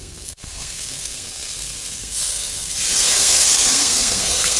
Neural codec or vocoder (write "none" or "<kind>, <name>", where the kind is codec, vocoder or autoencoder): codec, SNAC